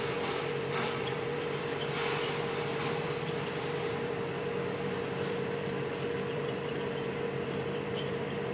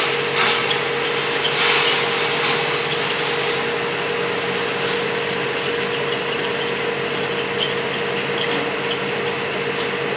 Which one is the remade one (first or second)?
first